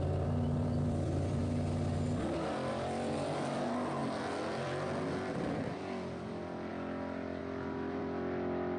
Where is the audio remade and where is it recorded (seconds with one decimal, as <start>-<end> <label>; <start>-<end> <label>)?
0.0-1.4 remade; 1.4-2.7 recorded; 2.7-7.4 remade; 7.4-8.0 recorded; 8.0-8.8 remade

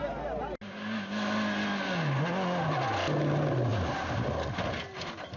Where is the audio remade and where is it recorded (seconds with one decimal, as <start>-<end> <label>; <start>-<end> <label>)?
0.0-5.4 recorded

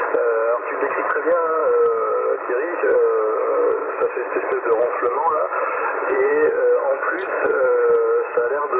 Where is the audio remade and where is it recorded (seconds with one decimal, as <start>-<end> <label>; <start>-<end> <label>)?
0.0-3.8 recorded; 3.8-6.3 remade; 6.3-8.8 recorded

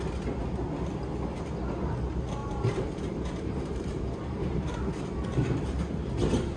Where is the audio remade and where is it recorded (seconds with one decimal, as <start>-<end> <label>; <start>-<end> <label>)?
0.0-2.4 recorded; 2.4-6.1 remade; 6.1-6.6 recorded

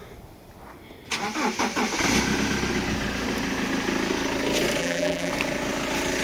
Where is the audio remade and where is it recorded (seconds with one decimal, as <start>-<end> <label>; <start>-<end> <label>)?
0.0-4.8 recorded; 4.8-5.3 remade; 5.3-6.2 recorded

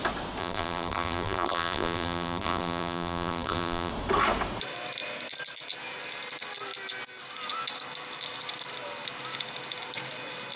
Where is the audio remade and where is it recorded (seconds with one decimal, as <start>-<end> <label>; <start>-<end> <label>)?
0.0-0.4 recorded; 0.4-3.9 remade; 3.9-10.6 recorded